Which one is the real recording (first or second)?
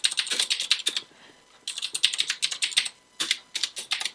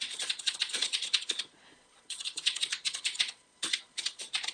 first